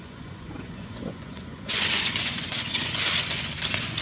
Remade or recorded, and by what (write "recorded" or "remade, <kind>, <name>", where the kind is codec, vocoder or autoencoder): remade, vocoder, Vocos